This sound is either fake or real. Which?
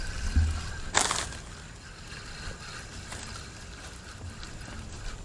real